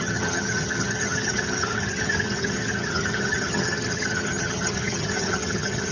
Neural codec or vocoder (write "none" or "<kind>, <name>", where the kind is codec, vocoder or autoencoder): vocoder, HiFi-GAN